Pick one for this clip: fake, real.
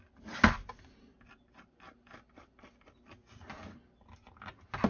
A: real